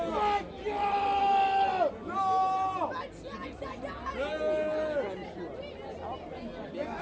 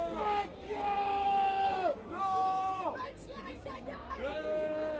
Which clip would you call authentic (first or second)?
first